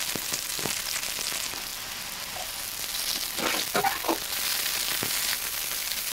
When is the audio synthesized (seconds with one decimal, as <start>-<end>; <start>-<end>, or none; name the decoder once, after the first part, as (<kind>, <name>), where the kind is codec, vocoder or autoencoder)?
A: none